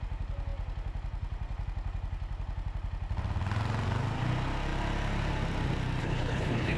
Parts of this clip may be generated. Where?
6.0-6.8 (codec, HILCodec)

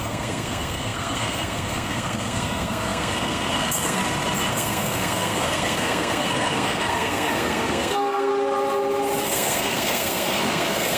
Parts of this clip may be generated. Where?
0.0-4.0 (codec, SNAC); 4.5-8.3; 9.2-11.0